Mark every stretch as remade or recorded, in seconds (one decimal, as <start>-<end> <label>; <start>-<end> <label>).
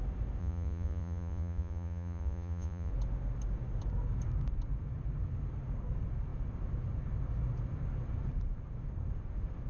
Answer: 0.0-0.4 recorded; 0.4-2.9 remade; 2.9-9.7 recorded